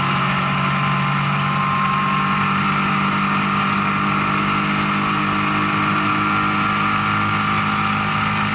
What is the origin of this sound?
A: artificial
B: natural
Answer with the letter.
B